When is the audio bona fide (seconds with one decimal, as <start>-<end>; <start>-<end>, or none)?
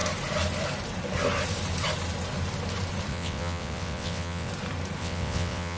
0.0-3.1; 4.5-5.0